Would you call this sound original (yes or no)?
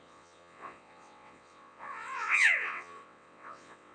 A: no